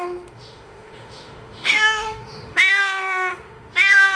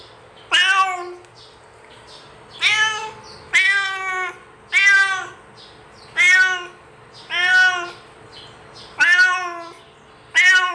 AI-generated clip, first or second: first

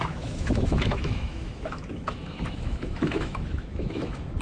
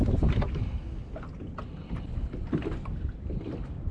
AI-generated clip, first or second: first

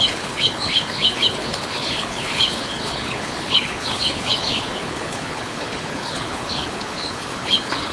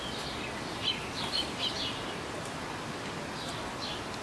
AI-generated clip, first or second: first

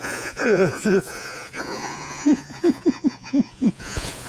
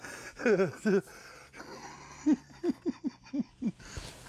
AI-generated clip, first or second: first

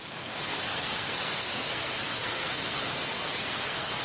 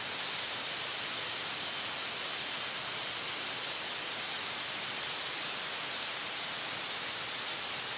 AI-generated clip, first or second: first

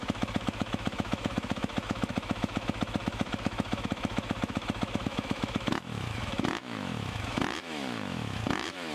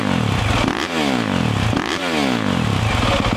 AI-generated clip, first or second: first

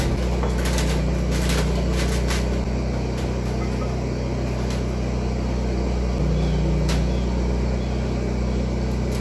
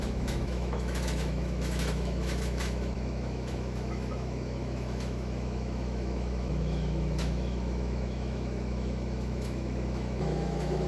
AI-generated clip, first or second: second